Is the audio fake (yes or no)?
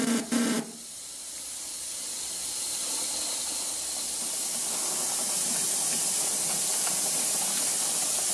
no